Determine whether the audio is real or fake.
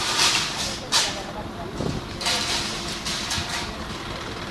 fake